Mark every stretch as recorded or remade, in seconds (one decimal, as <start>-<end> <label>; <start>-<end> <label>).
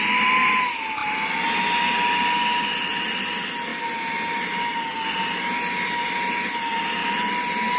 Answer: 0.0-7.0 recorded; 7.0-7.8 remade